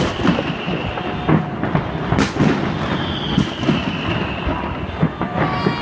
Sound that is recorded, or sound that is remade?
recorded